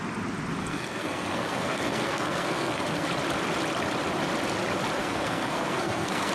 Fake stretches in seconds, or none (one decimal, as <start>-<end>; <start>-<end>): 0.6-3.1; 5.0-6.3